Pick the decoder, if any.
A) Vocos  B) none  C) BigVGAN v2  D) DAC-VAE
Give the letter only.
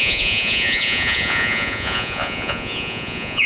A